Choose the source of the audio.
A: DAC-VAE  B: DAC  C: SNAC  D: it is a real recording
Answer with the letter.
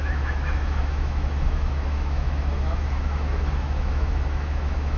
A